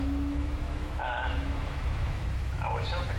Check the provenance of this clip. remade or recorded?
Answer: remade